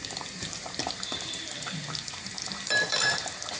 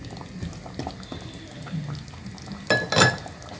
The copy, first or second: first